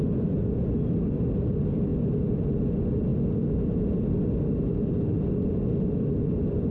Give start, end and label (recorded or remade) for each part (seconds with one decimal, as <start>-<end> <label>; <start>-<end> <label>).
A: 0.0-6.7 recorded